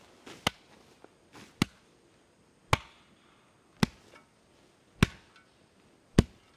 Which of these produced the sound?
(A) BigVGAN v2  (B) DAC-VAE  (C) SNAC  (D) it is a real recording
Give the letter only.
D